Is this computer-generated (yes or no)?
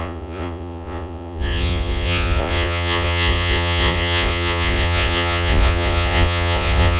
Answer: yes